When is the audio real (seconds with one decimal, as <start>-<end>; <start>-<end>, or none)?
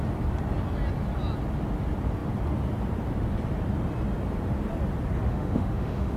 0.0-5.3